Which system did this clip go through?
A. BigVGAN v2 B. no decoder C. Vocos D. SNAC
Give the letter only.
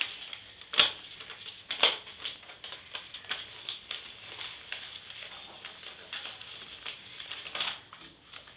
B